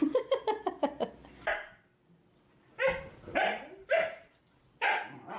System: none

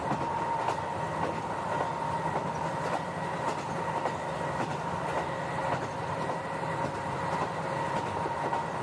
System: none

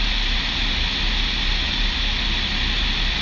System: none